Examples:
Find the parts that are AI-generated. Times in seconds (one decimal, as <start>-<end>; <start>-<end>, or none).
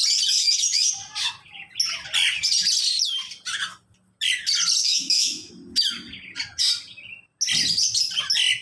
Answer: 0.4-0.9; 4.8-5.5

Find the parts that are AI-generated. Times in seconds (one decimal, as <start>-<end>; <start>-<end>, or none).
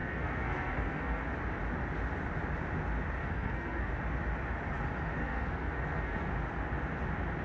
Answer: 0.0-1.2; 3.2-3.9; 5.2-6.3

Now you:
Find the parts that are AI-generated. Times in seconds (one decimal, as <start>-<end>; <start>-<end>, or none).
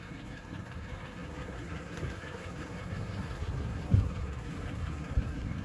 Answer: 0.0-5.6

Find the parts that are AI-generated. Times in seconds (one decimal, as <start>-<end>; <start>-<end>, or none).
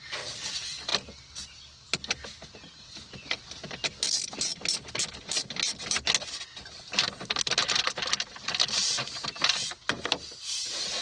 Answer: none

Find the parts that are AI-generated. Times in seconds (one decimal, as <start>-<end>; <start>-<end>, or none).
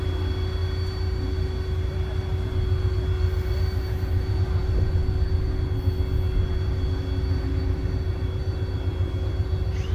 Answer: none